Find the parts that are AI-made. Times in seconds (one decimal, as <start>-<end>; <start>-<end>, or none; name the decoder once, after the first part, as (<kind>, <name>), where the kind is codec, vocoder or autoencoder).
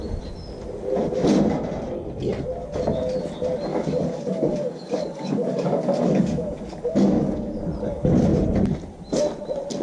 3.7-7.6 (codec, DAC)